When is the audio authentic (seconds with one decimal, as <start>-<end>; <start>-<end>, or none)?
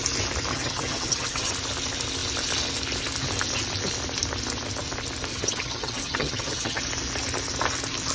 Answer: 0.0-0.5; 1.5-5.3; 6.8-8.1